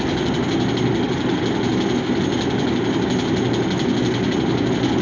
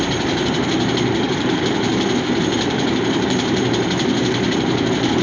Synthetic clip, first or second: second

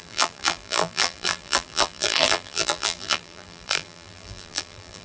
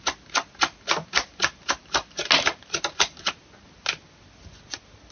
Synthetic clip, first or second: first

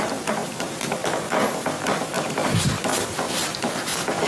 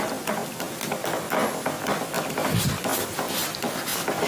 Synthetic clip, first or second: first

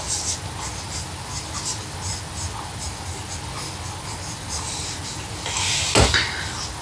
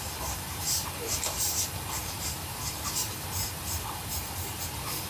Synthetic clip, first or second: second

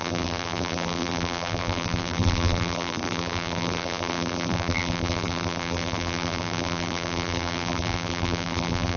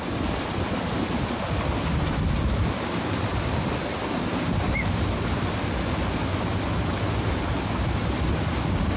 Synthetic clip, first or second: first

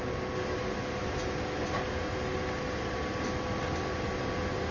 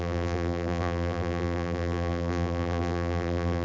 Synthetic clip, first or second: second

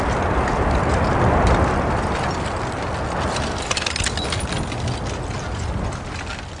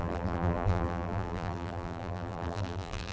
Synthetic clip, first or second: second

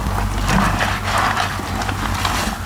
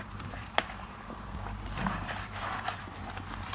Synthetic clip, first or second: second